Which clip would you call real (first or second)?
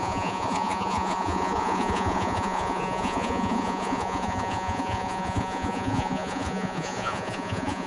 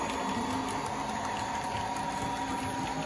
second